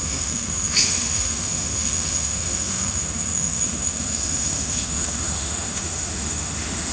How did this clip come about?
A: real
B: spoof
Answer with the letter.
B